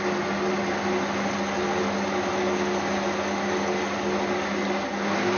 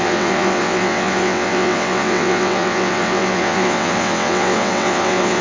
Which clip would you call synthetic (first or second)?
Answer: second